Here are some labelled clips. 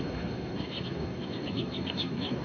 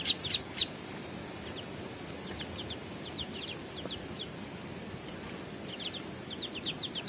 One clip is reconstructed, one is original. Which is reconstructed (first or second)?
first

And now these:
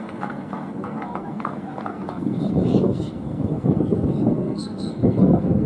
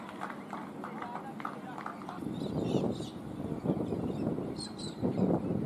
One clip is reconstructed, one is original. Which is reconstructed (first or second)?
first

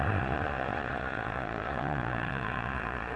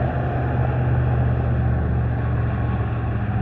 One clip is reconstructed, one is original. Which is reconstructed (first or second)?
first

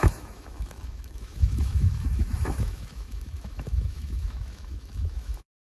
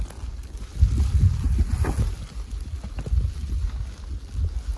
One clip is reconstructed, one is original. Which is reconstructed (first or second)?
first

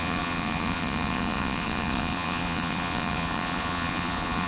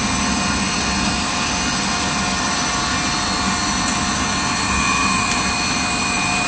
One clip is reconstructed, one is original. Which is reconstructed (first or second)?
first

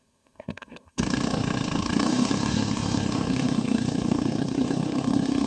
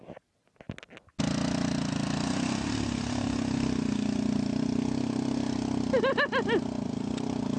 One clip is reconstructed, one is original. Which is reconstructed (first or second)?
first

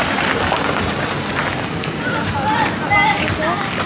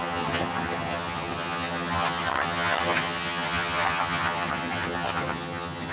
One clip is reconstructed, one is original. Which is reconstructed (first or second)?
second